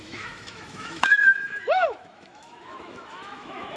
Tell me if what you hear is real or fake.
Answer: fake